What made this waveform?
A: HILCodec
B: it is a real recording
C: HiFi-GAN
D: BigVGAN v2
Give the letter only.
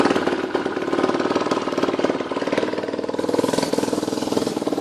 D